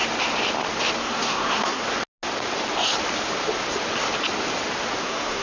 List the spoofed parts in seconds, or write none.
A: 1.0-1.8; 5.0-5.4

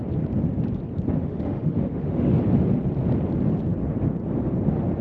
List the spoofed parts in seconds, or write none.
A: 1.2-2.4

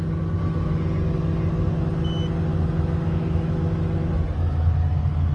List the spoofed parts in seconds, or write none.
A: 2.5-4.1

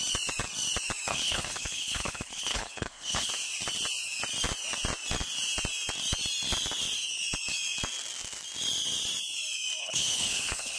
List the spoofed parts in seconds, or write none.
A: 1.1-3.3; 9.8-10.8

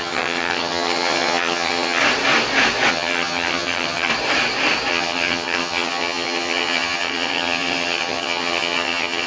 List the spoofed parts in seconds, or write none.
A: 0.0-2.0; 2.9-4.1; 4.9-9.3